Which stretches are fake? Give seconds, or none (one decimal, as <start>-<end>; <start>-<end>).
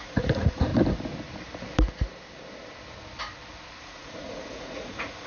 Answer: 0.0-0.7; 3.8-5.3